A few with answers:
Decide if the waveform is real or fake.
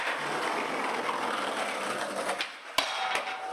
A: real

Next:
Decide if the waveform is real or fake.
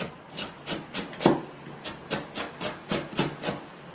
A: real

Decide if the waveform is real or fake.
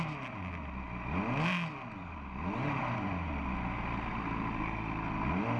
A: real